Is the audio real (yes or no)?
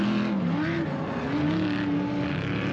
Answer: yes